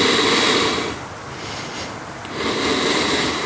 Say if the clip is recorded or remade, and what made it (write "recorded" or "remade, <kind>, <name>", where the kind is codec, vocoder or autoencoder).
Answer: recorded